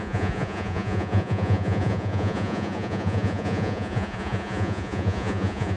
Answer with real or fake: fake